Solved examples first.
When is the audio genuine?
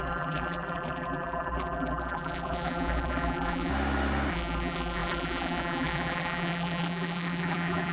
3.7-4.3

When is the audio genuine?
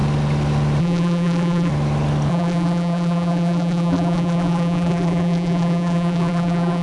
0.0-0.8; 1.7-2.3